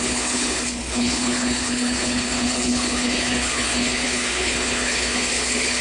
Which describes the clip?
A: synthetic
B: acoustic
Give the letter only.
A